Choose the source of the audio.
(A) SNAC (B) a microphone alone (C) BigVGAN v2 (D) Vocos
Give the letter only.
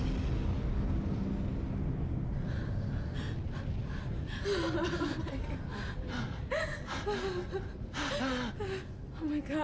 B